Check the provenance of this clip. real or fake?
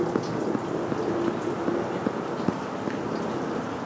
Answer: real